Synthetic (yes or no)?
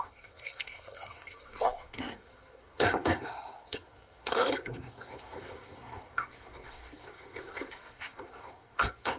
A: yes